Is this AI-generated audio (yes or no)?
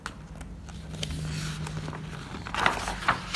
no